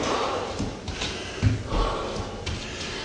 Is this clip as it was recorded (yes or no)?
yes